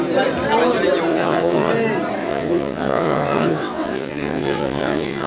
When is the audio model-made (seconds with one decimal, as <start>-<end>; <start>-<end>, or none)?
1.1-1.7; 2.2-5.3